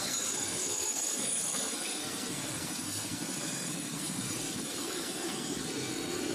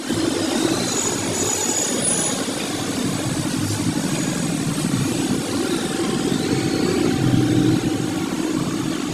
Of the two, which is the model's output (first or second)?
first